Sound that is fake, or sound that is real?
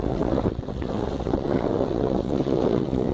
fake